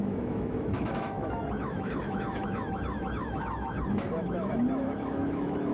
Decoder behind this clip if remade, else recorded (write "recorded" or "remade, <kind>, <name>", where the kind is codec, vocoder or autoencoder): remade, autoencoder, DAC-VAE